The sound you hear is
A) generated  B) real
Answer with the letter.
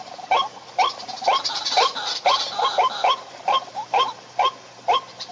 B